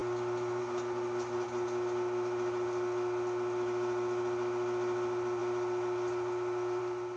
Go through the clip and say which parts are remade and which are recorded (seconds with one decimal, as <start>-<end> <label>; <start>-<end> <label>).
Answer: 0.0-7.2 recorded